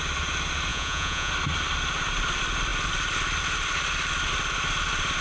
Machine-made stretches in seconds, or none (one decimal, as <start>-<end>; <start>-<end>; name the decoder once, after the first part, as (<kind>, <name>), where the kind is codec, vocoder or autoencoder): 0.7-1.3 (vocoder, Vocos)